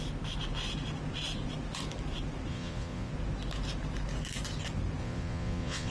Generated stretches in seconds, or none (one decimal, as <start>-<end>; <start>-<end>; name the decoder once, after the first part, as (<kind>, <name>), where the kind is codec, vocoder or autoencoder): 2.5-3.1 (vocoder, Vocos); 5.0-5.9